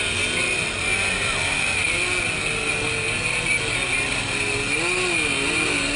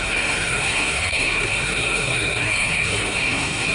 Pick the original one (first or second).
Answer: first